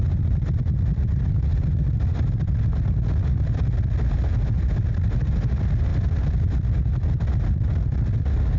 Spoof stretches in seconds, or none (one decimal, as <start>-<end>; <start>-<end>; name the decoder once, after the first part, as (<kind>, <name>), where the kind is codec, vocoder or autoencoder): none